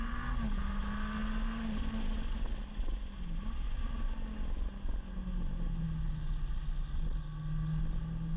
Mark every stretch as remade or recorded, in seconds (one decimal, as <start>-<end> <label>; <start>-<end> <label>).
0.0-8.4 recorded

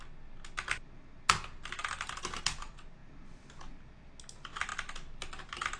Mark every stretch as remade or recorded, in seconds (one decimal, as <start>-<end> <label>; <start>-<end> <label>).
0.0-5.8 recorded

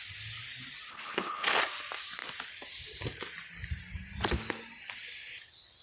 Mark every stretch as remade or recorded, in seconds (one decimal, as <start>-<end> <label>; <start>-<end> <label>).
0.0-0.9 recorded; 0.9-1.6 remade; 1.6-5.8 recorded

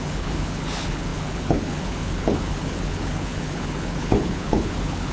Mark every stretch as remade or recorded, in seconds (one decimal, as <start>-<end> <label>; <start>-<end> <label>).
0.0-5.1 remade